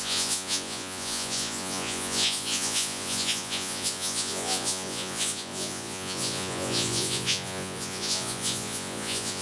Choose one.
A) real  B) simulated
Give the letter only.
B